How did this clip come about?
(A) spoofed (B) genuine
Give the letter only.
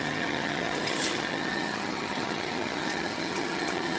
A